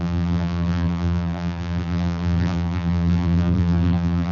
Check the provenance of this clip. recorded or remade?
remade